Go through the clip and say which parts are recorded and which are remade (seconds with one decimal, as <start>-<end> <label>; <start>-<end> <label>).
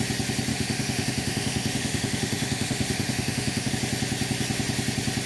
0.0-0.5 recorded; 0.5-3.7 remade; 3.7-5.3 recorded